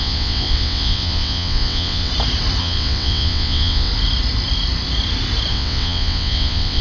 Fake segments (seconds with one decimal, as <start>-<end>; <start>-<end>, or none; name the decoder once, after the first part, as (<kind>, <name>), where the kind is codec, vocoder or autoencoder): 0.0-2.1 (vocoder, WaveNeXt); 2.6-3.9; 5.5-6.8